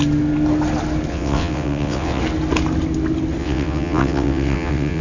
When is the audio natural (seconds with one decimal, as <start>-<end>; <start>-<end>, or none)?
0.0-1.1; 2.2-3.4